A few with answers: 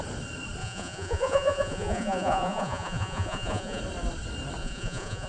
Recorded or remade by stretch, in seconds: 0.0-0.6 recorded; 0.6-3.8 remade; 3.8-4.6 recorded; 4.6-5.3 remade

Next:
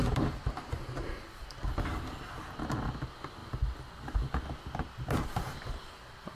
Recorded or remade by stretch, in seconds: 0.0-6.3 recorded

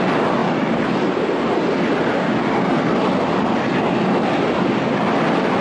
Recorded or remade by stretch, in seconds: 0.0-5.6 recorded

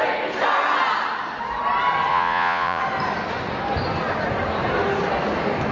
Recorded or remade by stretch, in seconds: 0.0-2.1 recorded; 2.1-2.8 remade; 2.8-5.7 recorded

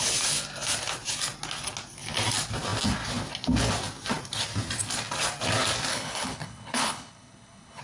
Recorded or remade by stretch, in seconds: 0.0-5.9 recorded; 5.9-7.8 remade

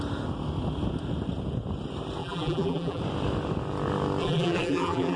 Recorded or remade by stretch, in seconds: 0.0-2.2 recorded; 2.2-3.0 remade; 3.0-4.2 recorded; 4.2-5.2 remade